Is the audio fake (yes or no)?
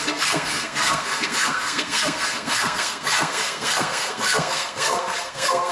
yes